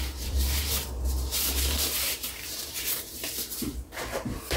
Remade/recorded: remade